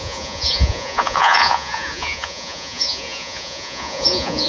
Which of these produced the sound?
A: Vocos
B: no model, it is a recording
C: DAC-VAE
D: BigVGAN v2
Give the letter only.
A